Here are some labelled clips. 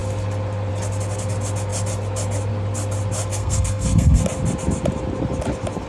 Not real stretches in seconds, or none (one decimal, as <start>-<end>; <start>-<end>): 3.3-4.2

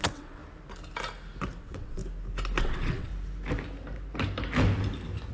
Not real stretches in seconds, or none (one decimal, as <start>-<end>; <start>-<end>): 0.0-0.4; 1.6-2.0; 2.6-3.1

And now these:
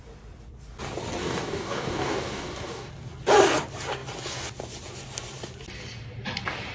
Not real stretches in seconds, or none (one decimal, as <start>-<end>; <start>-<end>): 1.2-2.9

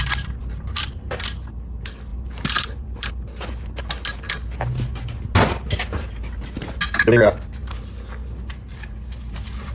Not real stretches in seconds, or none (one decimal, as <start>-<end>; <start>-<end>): 0.4-1.1; 2.1-3.1; 7.6-9.7

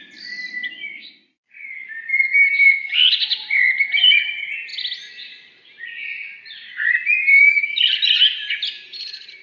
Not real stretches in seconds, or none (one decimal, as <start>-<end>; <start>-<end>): none

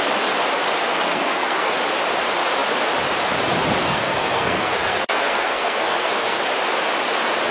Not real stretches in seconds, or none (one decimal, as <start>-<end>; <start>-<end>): 0.8-1.7; 3.8-6.4

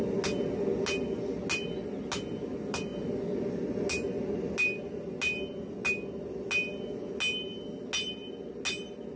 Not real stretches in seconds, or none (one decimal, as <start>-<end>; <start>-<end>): none

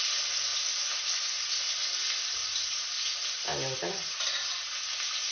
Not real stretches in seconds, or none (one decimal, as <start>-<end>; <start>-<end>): none